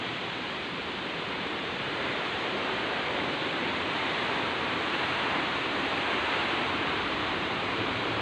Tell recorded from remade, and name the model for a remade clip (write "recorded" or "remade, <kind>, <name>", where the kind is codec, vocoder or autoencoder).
remade, vocoder, BigVGAN v2